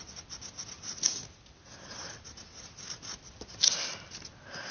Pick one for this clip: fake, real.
real